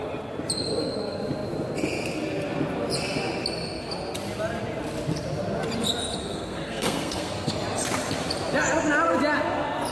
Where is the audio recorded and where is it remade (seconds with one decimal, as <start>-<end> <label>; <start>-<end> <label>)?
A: 0.0-6.2 recorded; 6.2-7.5 remade; 7.5-9.9 recorded